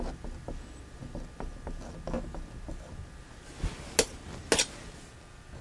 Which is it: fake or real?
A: real